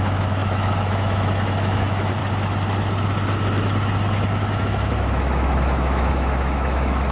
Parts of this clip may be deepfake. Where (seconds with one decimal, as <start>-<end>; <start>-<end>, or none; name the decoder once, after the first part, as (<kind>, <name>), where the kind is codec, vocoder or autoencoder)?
0.0-2.2 (autoencoder, DAC-VAE); 4.6-7.1